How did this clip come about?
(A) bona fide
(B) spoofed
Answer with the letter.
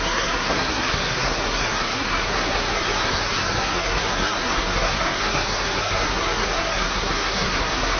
B